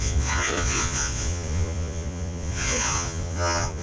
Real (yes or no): no